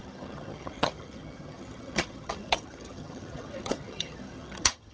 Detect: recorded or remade remade